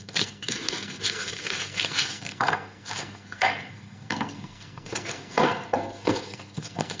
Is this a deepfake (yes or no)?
yes